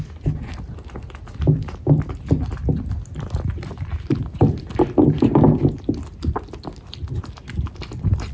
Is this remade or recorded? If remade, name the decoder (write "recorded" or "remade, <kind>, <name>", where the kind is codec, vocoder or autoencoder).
recorded